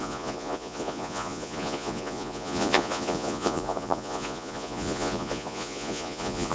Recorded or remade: remade